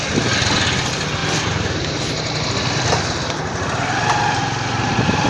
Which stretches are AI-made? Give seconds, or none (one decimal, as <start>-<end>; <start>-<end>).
none